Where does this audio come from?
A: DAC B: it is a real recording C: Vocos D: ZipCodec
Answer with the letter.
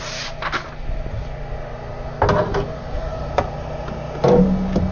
B